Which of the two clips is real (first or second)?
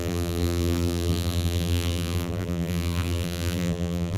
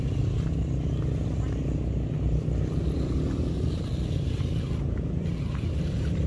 second